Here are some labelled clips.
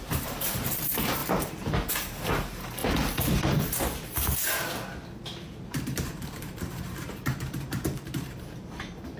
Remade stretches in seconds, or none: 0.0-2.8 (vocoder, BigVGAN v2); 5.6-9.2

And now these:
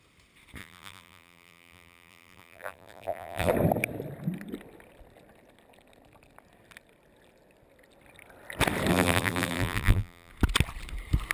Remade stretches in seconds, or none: 0.6-3.5 (vocoder, BigVGAN v2); 8.9-10.3

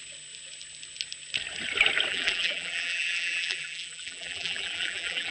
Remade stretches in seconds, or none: 2.1-5.3 (vocoder, BigVGAN v2)

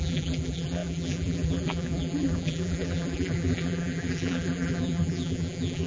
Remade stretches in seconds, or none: 0.0-5.9 (vocoder, BigVGAN v2)

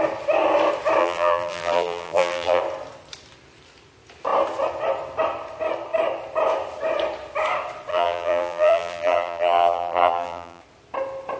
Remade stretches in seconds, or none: 1.0-2.6 (vocoder, BigVGAN v2); 7.9-10.6